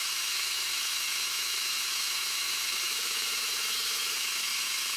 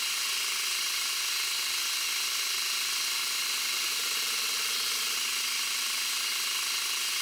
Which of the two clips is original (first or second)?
second